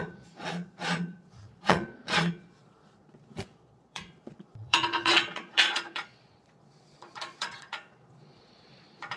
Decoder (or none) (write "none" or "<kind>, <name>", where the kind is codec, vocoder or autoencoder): vocoder, Vocos